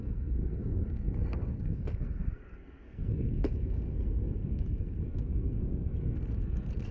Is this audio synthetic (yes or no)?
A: yes